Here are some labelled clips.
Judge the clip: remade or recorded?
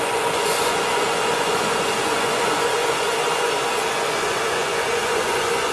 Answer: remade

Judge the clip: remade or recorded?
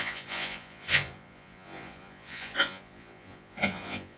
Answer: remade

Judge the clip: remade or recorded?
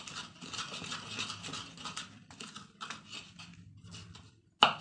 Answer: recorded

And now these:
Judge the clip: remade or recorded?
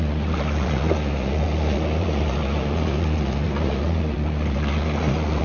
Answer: remade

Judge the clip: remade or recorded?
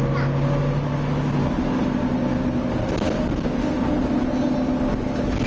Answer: recorded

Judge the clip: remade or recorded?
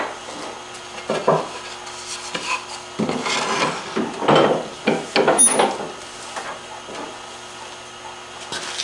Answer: recorded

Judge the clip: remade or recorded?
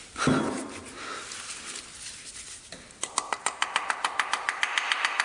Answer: recorded